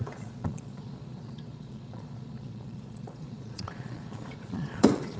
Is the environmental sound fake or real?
fake